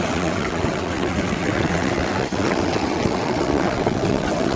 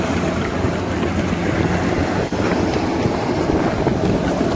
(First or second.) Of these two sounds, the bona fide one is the second